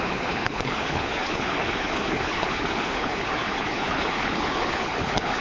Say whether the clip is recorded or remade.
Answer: remade